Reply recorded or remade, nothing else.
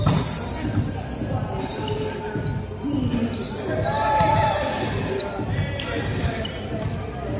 recorded